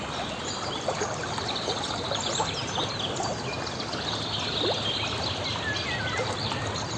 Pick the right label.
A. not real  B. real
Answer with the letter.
B